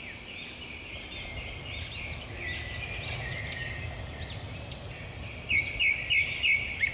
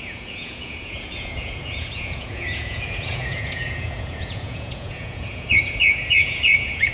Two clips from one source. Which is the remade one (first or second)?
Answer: second